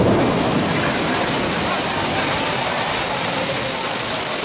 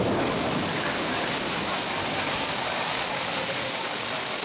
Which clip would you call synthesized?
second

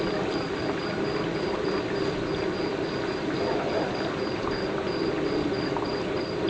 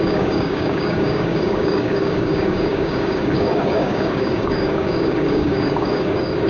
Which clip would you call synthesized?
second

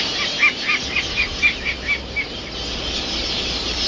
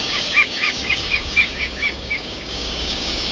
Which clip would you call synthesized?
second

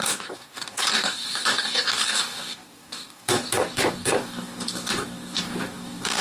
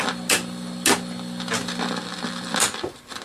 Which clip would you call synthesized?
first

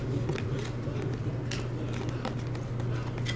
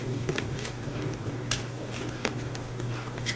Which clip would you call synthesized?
second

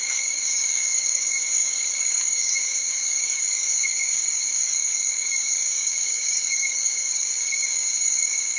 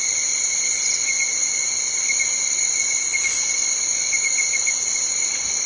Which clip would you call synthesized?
first